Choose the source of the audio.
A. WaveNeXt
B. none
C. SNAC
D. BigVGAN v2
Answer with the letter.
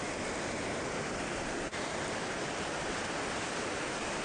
D